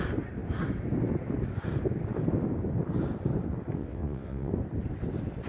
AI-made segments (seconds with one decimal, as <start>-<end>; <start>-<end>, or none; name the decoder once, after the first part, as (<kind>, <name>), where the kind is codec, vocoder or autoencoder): 3.8-4.5 (vocoder, WaveNeXt)